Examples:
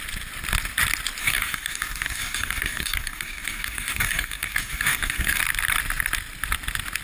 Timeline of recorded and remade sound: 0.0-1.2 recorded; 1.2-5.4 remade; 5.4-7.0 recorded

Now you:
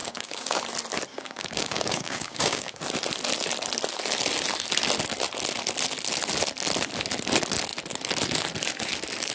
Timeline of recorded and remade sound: 0.0-0.6 remade; 0.6-1.1 recorded; 1.1-2.8 remade; 2.8-9.3 recorded

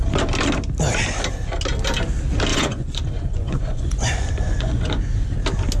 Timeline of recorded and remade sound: 0.0-2.5 recorded; 2.5-5.3 remade; 5.3-5.8 recorded

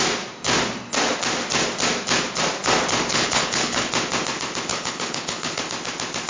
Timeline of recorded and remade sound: 0.0-3.1 recorded; 3.1-3.9 remade; 3.9-4.7 recorded; 4.7-5.6 remade; 5.6-6.3 recorded

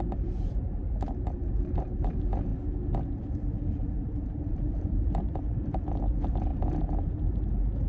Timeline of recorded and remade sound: 0.0-2.5 remade; 2.5-3.2 recorded; 3.2-6.5 remade; 6.5-7.9 recorded

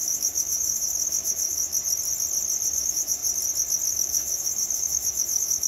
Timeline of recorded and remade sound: 0.0-1.7 remade; 1.7-2.7 recorded; 2.7-3.2 remade; 3.2-3.9 recorded; 3.9-5.7 remade